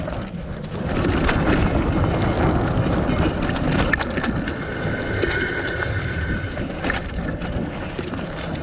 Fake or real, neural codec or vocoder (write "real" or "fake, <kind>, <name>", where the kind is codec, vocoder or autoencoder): real